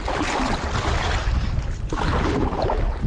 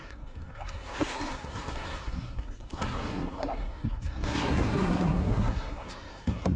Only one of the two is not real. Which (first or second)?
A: second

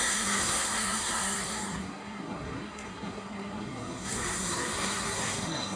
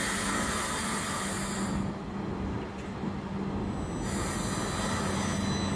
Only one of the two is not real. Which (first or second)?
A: first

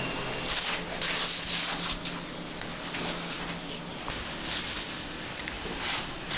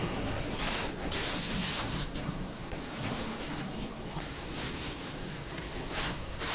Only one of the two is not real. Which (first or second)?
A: second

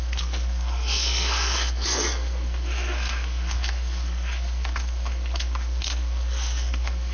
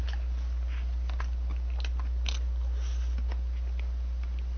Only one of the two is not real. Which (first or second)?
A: first